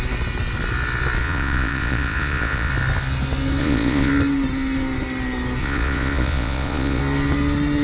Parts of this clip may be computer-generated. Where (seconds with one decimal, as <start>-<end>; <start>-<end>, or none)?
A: 1.2-2.7; 3.6-4.1; 5.6-7.0